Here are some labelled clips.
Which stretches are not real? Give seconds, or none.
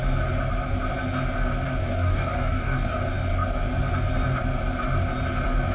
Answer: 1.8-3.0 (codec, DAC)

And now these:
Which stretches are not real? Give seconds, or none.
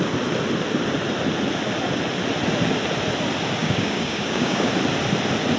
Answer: 3.6-4.7 (codec, DAC)